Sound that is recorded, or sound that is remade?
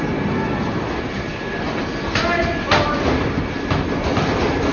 recorded